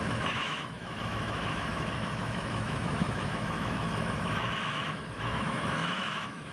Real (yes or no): no